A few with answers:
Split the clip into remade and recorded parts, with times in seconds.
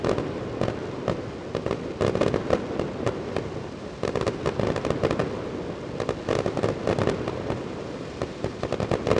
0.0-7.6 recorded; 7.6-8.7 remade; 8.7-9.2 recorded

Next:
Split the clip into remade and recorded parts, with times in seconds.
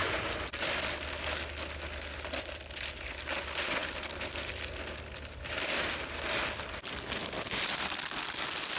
0.0-8.8 recorded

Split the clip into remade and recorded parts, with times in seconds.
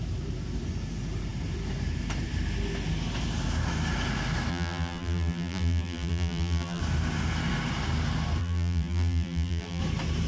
0.0-4.5 recorded; 4.5-6.8 remade; 6.8-8.4 recorded; 8.4-9.8 remade; 9.8-10.3 recorded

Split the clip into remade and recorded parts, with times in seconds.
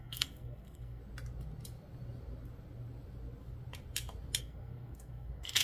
0.0-1.0 remade; 1.0-4.4 recorded; 4.4-5.6 remade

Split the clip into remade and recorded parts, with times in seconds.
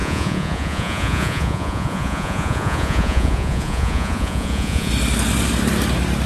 0.0-4.9 remade; 4.9-6.3 recorded